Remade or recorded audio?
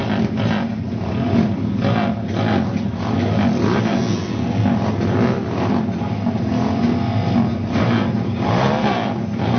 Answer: recorded